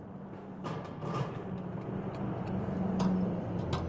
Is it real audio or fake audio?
real